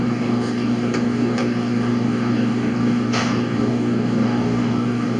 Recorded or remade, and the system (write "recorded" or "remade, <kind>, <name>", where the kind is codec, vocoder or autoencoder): remade, codec, DAC